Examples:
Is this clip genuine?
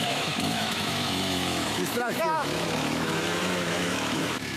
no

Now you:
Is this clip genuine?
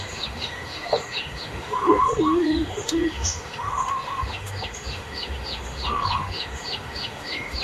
no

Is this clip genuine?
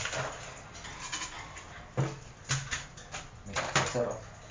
yes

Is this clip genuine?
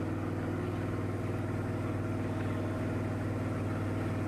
yes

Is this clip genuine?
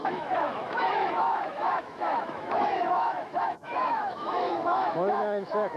no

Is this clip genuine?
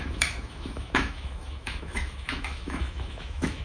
no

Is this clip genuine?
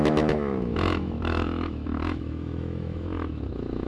no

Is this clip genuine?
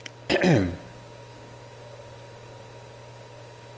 yes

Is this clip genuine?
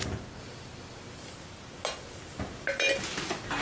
yes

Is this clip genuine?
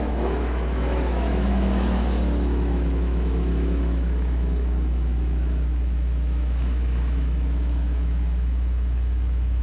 no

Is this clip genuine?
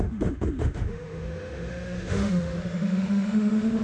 no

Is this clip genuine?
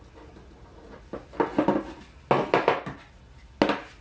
yes